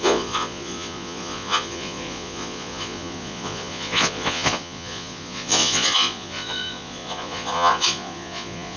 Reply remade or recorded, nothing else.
remade